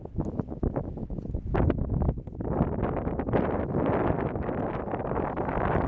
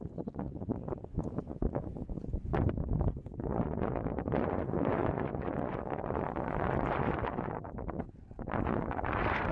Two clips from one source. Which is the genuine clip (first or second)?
first